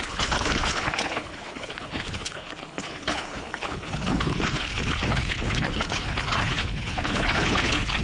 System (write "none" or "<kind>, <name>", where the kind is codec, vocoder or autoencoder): codec, HILCodec